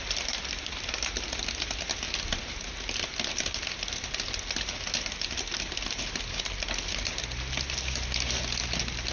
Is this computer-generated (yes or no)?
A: no